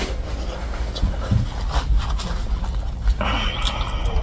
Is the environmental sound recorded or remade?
recorded